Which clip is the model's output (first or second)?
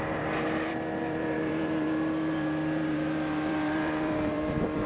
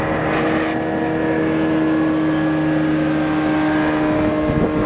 first